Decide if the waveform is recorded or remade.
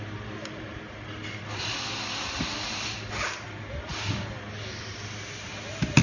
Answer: recorded